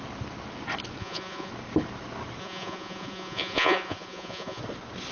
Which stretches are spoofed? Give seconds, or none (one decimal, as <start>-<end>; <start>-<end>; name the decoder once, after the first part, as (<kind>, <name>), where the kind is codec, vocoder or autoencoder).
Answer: 1.0-1.5 (vocoder, Vocos); 2.4-4.6